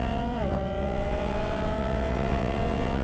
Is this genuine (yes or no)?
no